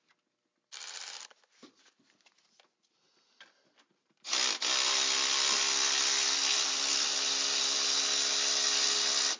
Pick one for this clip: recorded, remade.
recorded